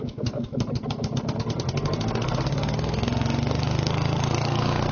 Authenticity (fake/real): fake